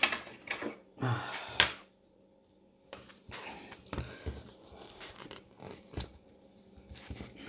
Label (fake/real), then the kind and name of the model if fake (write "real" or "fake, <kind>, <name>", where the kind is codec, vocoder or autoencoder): real